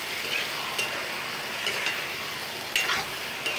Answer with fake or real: real